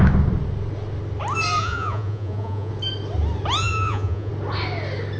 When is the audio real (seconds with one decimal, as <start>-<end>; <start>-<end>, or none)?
0.0-1.6; 2.7-3.6; 4.3-5.2